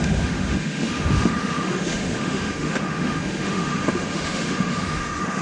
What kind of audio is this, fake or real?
fake